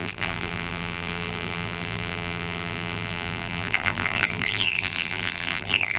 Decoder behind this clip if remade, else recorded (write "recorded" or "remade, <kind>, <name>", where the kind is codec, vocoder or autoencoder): remade, vocoder, BigVGAN v2